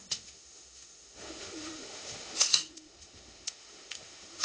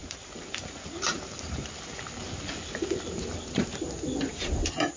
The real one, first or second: second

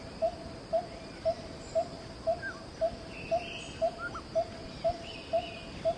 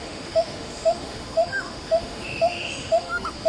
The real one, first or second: first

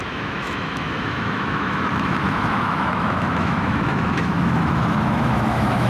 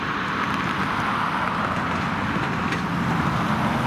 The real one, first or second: second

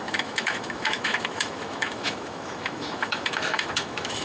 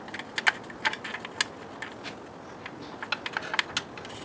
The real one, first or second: second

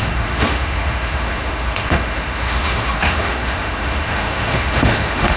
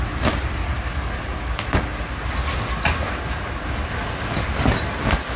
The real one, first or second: second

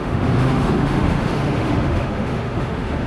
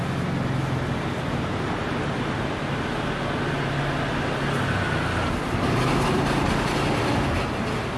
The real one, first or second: second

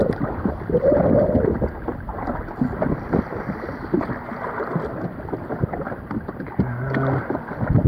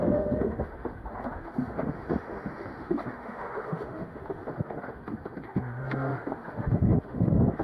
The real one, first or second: first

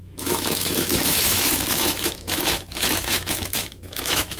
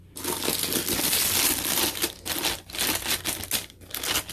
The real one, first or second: second